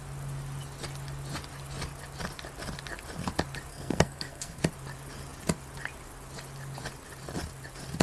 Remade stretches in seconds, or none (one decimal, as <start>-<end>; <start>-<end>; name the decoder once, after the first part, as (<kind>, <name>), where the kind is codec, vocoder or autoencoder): 3.7-4.6 (codec, SNAC)